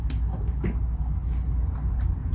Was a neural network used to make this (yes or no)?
no